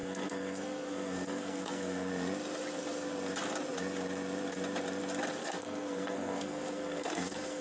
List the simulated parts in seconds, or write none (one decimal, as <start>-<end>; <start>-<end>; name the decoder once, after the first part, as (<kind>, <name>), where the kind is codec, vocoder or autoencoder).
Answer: 0.0-2.1 (codec, SNAC); 5.4-7.6